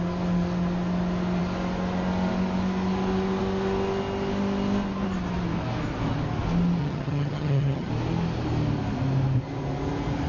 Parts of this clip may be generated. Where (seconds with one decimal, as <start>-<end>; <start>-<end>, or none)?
6.8-7.9